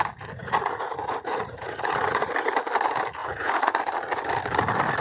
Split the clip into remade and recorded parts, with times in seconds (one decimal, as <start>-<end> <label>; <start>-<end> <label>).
0.0-0.4 recorded; 0.4-2.3 remade; 2.3-3.2 recorded; 3.2-3.8 remade; 3.8-5.0 recorded